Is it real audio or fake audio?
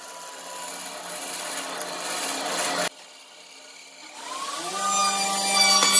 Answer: real